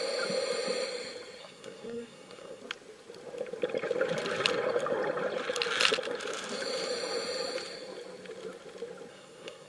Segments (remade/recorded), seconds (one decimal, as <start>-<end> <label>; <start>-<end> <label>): 0.0-1.4 recorded; 1.4-2.6 remade; 2.6-9.1 recorded; 9.1-9.7 remade